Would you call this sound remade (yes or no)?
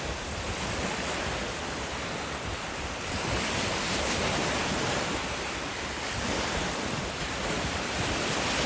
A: no